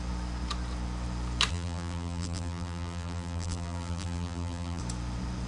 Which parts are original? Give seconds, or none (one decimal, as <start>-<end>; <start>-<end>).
0.0-1.5; 4.8-5.5